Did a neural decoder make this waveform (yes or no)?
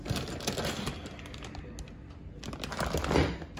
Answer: no